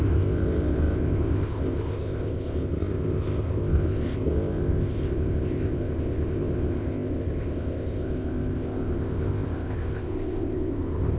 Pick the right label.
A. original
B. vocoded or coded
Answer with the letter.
B